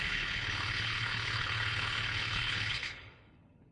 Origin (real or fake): fake